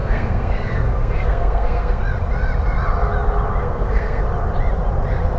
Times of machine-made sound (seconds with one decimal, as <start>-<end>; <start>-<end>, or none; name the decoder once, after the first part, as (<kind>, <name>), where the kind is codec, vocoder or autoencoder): 0.0-2.0 (codec, SNAC); 3.6-4.2